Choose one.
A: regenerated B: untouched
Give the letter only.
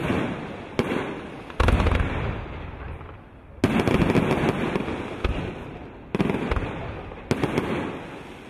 B